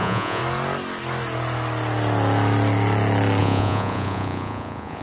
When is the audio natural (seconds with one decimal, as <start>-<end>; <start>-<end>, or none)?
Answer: 0.4-3.4